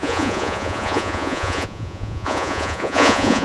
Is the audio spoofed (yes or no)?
yes